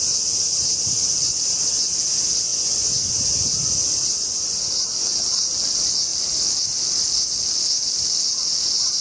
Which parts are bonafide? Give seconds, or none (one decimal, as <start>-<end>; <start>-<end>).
0.0-2.5; 3.1-4.2; 4.7-9.0